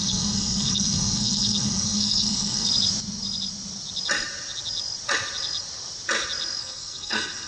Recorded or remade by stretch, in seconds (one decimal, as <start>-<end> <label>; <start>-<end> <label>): 0.0-2.7 remade; 2.7-6.6 recorded; 6.6-7.5 remade